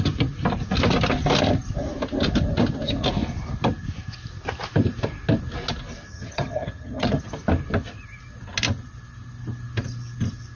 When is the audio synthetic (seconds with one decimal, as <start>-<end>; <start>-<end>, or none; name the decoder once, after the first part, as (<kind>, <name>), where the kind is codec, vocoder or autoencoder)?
6.1-7.2 (vocoder, HiFi-GAN)